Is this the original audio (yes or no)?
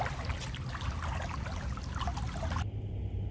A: yes